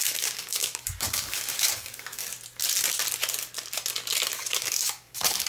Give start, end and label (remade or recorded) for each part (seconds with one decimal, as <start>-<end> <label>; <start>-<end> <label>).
0.0-2.2 remade; 2.2-4.3 recorded; 4.3-5.5 remade